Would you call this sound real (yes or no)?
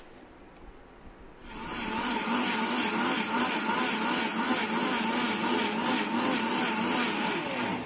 yes